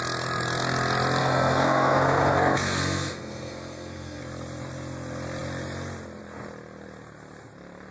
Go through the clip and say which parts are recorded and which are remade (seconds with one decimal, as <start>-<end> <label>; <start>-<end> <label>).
0.0-1.2 recorded; 1.2-4.2 remade; 4.2-7.9 recorded